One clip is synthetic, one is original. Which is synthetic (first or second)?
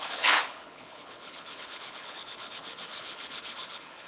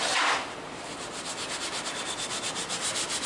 first